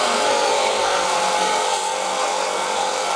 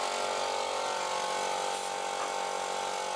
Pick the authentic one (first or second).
second